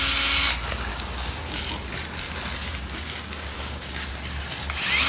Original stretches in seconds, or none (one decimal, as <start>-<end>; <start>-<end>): 0.0-0.9; 1.6-2.6; 4.1-5.1